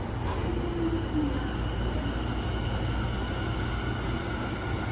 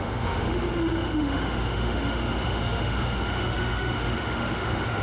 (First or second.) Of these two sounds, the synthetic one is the second